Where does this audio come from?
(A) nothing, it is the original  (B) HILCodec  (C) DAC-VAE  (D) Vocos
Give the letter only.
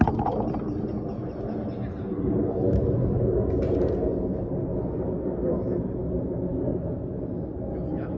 A